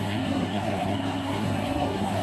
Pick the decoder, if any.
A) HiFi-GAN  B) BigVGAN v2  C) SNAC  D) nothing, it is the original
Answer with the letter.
C